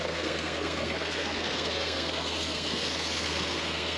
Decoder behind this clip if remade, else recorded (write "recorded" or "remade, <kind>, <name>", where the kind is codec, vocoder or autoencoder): remade, codec, SNAC